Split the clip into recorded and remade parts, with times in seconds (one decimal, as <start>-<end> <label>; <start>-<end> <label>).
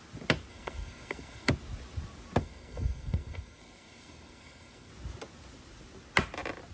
0.0-0.5 recorded; 0.5-1.5 remade; 1.5-2.4 recorded; 2.4-4.9 remade; 4.9-6.7 recorded